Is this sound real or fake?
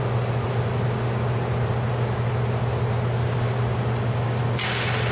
real